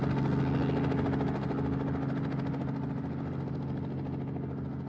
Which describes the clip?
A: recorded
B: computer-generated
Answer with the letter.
A